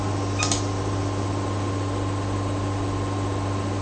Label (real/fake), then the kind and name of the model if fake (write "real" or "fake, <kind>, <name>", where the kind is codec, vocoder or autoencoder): real